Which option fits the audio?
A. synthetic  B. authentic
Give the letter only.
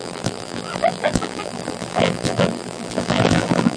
A